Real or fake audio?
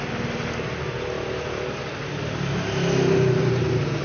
real